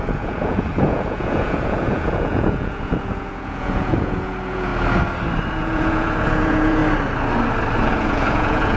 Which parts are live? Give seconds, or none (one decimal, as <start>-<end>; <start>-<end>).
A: 4.7-5.5; 6.8-7.9